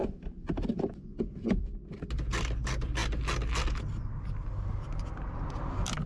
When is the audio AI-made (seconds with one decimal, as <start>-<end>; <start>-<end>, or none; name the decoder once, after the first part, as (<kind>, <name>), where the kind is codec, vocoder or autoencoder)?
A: none